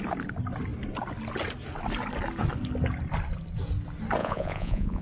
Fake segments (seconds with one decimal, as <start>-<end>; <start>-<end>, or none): 4.2-5.0